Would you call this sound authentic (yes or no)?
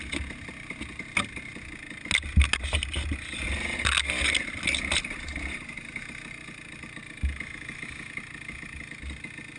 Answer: yes